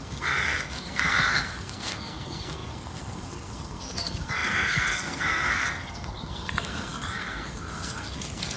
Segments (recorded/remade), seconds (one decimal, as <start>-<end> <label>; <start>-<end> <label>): 0.0-8.6 remade

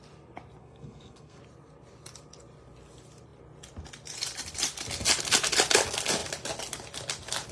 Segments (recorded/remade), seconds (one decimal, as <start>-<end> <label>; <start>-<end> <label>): 0.0-0.6 recorded; 0.6-1.4 remade; 1.4-7.5 recorded